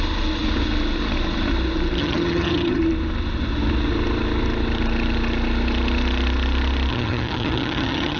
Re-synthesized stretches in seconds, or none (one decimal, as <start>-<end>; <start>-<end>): 2.0-2.8; 6.9-8.2